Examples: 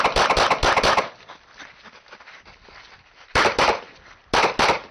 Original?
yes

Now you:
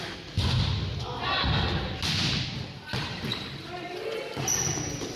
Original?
yes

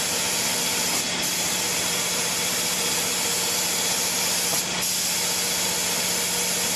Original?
yes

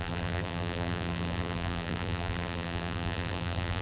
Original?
no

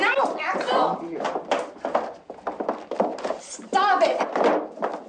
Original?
yes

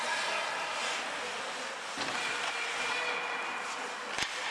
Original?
yes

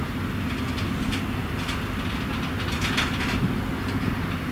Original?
yes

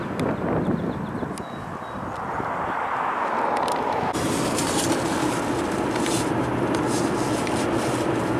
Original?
yes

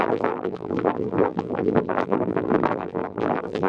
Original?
no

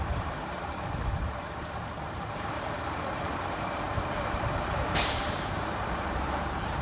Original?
no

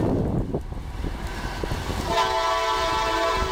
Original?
yes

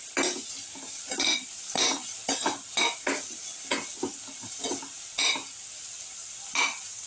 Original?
yes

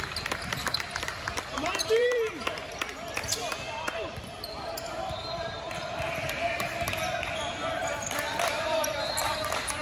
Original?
no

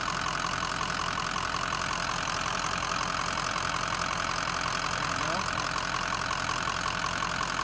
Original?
yes